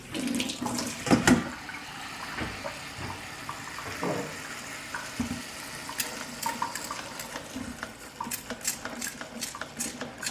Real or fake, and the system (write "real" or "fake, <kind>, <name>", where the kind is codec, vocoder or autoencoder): real